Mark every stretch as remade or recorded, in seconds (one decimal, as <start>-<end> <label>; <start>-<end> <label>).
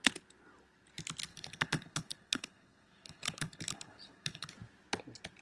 0.0-1.3 recorded; 1.3-4.5 remade; 4.5-5.4 recorded